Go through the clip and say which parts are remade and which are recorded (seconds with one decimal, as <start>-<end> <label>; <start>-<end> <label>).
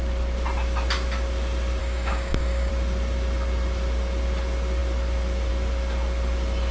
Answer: 0.0-1.8 recorded; 1.8-2.7 remade; 2.7-6.7 recorded